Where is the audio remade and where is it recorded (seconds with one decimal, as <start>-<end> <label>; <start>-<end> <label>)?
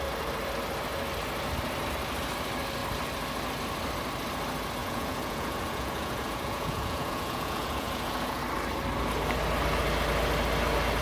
0.0-4.8 recorded; 4.8-8.4 remade; 8.4-11.0 recorded